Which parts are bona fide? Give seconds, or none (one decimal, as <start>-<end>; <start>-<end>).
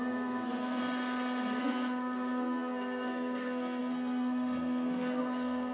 0.8-1.6